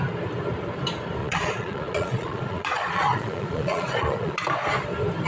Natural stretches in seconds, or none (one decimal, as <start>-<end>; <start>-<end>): 0.0-1.2; 4.4-5.3